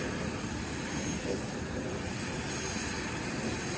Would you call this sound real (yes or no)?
yes